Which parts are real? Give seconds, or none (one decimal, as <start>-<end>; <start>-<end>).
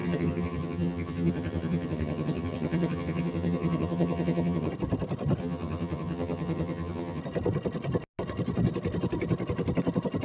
4.7-5.4; 7.2-10.2